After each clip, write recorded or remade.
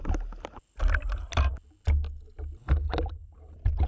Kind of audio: recorded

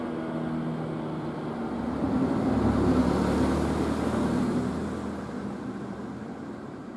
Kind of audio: recorded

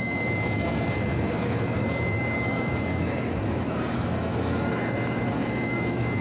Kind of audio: remade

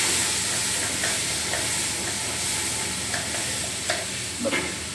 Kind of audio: recorded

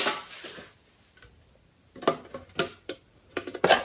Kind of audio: recorded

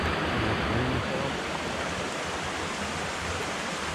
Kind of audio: recorded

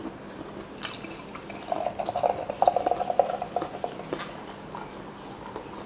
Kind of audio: recorded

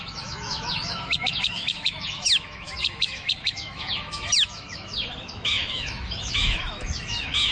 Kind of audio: remade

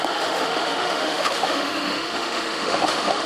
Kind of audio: remade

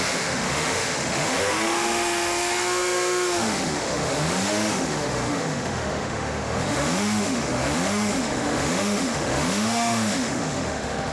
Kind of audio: remade